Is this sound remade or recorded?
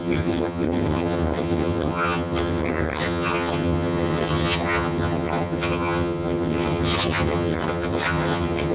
remade